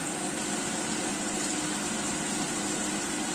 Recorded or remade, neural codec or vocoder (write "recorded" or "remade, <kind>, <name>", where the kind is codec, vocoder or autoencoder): recorded